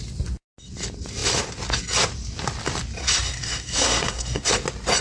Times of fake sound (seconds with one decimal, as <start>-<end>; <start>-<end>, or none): 3.0-4.5